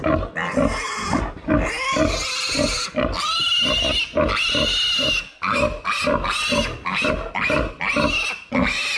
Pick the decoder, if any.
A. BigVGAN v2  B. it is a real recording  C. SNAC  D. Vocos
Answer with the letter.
B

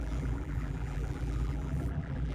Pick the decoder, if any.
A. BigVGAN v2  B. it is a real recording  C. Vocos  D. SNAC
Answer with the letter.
A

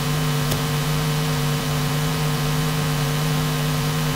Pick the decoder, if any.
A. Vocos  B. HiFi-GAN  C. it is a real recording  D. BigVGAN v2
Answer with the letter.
D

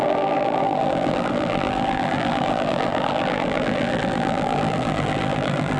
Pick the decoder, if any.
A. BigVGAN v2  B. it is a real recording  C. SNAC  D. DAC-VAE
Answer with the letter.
A